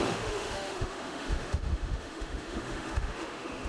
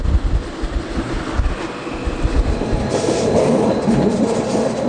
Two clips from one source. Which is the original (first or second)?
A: second